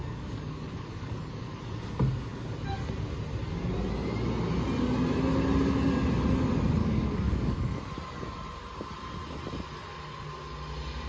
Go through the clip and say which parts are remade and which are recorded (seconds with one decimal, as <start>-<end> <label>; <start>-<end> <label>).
0.0-1.6 remade; 1.6-6.8 recorded; 6.8-7.8 remade; 7.8-11.1 recorded